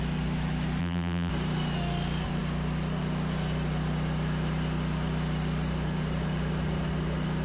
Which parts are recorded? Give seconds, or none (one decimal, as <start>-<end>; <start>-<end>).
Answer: 0.0-0.8; 1.3-7.4